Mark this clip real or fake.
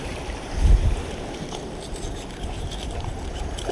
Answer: fake